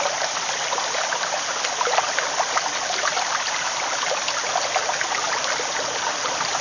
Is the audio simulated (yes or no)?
no